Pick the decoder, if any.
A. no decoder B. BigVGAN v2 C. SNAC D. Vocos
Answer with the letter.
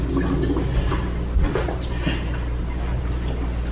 A